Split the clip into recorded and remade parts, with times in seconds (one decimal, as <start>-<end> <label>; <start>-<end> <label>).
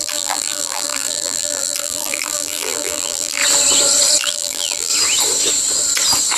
0.0-3.4 remade; 3.4-4.2 recorded; 4.2-4.9 remade; 4.9-6.4 recorded